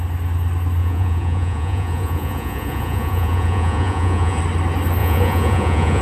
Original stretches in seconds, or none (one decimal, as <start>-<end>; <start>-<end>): 0.0-0.8; 4.4-5.0